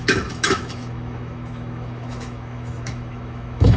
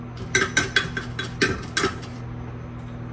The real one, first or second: second